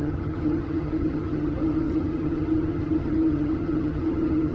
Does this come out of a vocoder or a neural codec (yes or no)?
yes